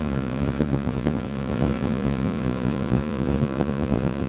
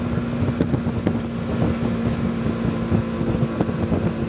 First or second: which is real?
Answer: second